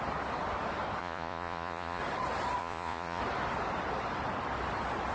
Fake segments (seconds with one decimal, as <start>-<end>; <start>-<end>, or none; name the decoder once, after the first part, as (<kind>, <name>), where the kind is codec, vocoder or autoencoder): 1.0-2.0 (vocoder, Vocos); 2.6-3.2